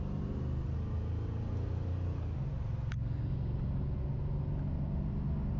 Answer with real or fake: real